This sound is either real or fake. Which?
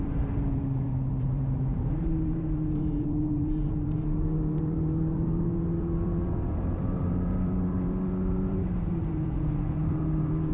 fake